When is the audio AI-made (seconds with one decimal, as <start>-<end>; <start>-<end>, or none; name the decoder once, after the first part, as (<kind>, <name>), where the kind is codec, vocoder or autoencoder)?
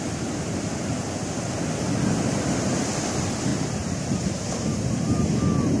3.5-4.5 (vocoder, BigVGAN v2)